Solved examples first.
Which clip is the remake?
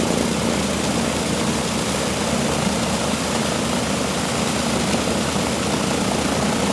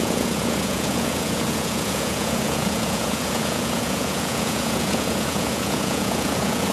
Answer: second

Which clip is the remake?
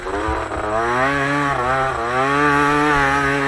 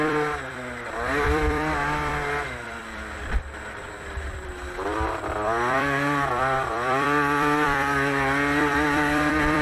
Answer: second